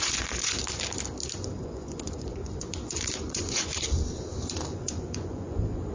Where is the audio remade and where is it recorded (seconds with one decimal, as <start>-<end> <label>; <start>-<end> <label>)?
0.0-0.6 remade; 0.6-1.6 recorded; 1.6-3.7 remade; 3.7-4.7 recorded; 4.7-5.9 remade